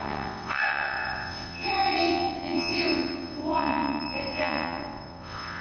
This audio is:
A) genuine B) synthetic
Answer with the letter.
B